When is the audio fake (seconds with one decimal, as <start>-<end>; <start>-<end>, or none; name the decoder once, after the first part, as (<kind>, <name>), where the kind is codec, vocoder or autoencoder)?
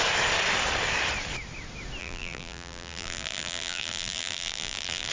2.0-5.1 (vocoder, BigVGAN v2)